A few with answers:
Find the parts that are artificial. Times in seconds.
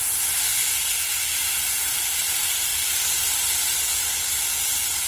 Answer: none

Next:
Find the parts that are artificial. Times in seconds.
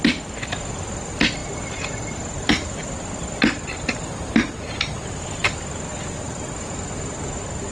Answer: none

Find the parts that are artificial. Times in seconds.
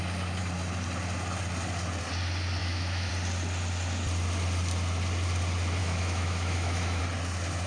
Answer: 2.6-3.1 (autoencoder, DAC-VAE); 5.8-7.0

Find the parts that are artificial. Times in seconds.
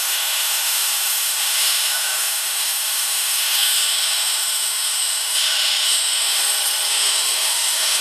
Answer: 0.0-6.4 (autoencoder, DAC-VAE); 6.9-8.0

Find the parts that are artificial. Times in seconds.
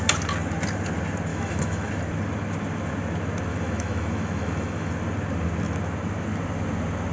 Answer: 1.3-1.9 (autoencoder, DAC-VAE); 3.5-4.9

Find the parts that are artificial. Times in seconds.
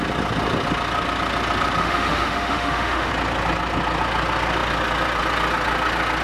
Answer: 1.8-3.1 (autoencoder, DAC-VAE)